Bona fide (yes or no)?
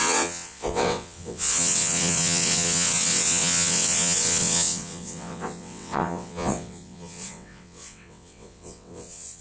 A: no